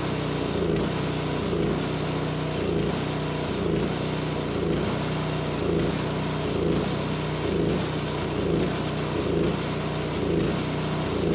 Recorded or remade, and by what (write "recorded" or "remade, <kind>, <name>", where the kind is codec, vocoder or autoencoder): recorded